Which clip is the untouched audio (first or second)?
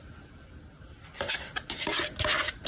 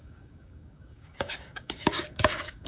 first